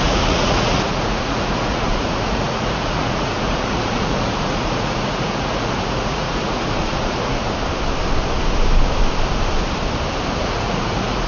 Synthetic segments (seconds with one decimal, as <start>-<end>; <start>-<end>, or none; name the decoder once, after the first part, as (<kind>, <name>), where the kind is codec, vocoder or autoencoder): 0.0-7.4 (vocoder, Vocos); 10.4-11.3